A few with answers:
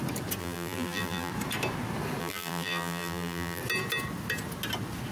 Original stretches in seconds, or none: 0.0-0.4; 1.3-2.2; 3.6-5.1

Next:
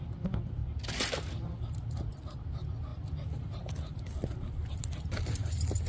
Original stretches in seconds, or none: 0.0-2.9; 3.7-5.9

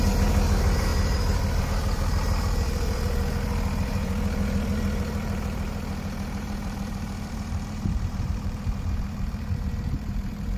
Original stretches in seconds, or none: none

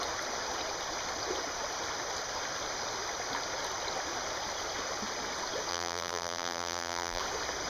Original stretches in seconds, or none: 0.0-5.7; 7.2-7.7

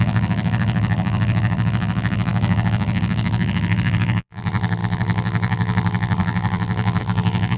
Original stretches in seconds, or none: none

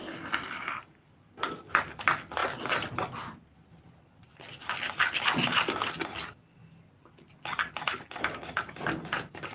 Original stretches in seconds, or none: 0.0-9.5

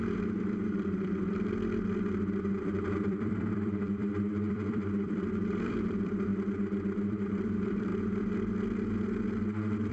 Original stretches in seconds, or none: 6.3-7.1; 7.9-9.9

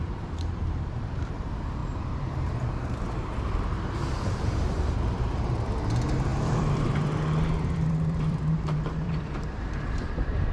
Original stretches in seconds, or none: none